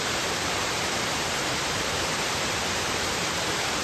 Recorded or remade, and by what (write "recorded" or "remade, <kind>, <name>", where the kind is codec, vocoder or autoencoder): remade, vocoder, BigVGAN v2